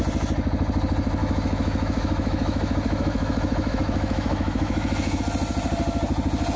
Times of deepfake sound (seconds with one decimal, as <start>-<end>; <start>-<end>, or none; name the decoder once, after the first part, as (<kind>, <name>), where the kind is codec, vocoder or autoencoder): 1.2-5.2 (autoencoder, DAC-VAE)